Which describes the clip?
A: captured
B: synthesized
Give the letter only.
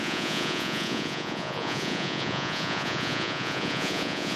B